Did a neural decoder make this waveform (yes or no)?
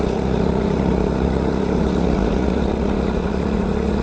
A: yes